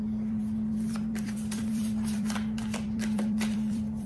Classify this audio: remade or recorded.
remade